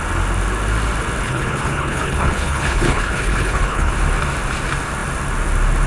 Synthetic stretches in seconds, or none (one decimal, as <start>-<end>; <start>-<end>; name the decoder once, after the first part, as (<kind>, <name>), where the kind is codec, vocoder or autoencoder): 1.2-3.9 (codec, HILCodec)